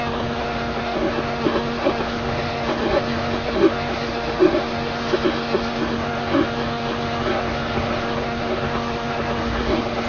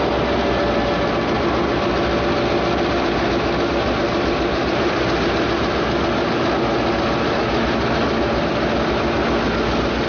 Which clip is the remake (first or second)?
first